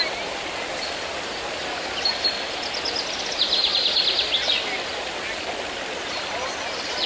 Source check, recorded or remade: recorded